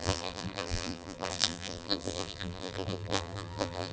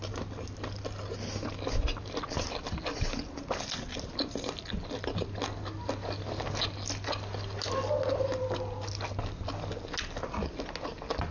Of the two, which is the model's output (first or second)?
first